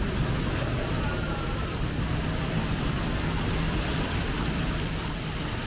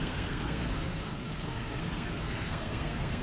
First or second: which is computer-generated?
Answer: second